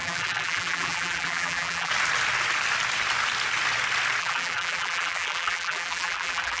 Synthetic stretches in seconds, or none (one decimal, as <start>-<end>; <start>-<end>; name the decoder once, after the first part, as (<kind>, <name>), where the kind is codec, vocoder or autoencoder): 0.0-1.9 (vocoder, BigVGAN v2); 4.2-6.6